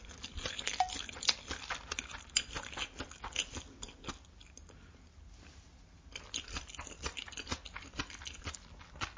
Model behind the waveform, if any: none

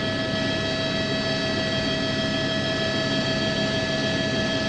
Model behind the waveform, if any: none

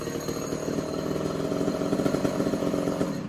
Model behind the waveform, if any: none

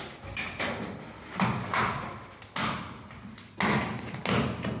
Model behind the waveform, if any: none